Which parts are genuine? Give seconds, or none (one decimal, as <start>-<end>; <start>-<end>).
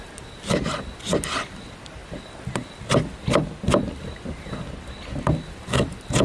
0.0-6.2